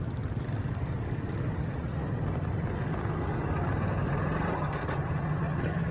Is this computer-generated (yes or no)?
no